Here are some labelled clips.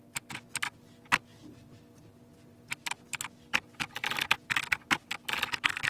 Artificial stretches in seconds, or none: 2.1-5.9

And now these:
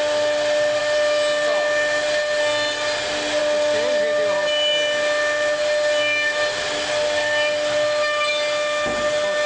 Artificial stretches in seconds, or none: none

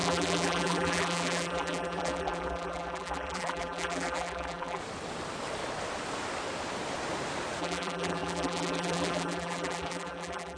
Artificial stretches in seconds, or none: 0.0-4.8; 7.6-10.6